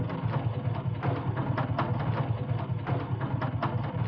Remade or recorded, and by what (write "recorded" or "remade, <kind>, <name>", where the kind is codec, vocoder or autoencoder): recorded